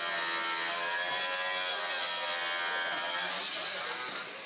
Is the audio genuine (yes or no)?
yes